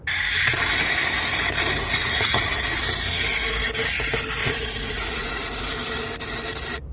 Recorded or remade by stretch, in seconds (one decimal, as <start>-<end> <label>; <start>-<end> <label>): 0.0-1.8 recorded; 1.8-2.8 remade; 2.8-4.4 recorded; 4.4-5.6 remade; 5.6-6.9 recorded